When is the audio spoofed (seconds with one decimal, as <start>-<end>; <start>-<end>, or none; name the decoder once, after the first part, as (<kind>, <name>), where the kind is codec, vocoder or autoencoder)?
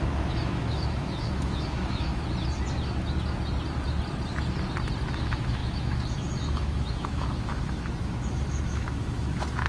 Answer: 0.0-2.2 (autoencoder, DAC-VAE); 5.1-9.7